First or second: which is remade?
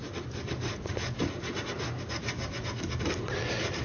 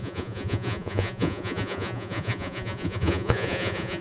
second